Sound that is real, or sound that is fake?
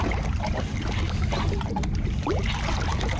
real